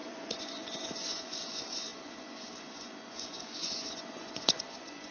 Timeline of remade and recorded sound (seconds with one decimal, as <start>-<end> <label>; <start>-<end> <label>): 0.0-5.1 remade